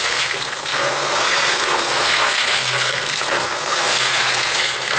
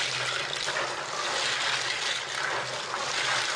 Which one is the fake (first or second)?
first